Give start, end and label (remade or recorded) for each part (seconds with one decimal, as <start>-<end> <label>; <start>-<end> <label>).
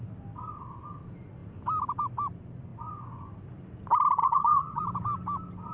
0.0-4.2 recorded; 4.2-4.8 remade; 4.8-5.7 recorded